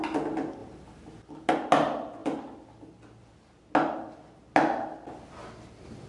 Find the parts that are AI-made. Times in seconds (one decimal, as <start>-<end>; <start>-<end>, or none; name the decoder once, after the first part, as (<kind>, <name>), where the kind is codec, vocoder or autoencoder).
none